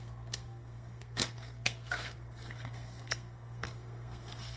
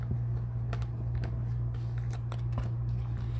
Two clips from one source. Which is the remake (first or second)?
first